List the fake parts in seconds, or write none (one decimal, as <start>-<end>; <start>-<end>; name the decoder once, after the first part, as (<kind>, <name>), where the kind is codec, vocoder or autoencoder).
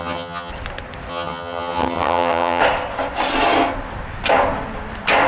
0.0-0.5 (vocoder, HiFi-GAN); 1.1-2.6